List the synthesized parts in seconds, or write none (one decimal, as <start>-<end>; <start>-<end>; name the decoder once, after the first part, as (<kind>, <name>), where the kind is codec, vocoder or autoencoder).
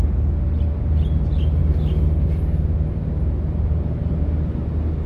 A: none